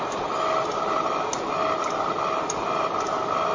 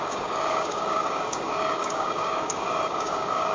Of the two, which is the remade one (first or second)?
second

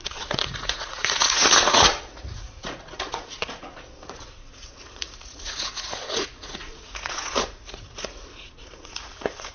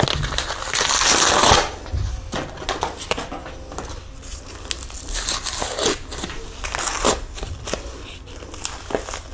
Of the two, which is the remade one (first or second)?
first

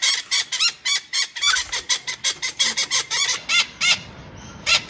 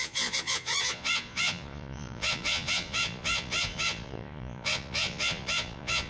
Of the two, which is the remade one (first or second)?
second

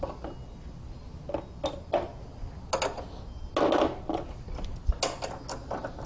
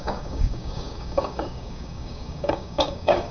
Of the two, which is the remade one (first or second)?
second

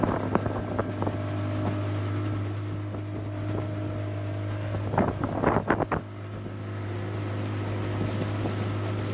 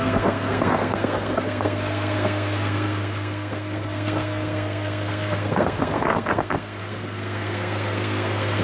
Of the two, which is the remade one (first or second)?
second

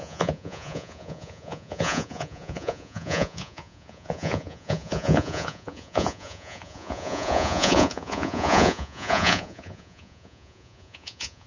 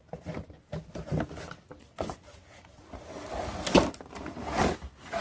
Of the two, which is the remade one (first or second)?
first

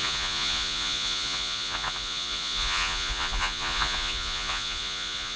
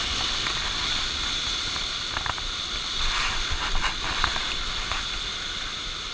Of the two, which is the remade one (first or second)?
first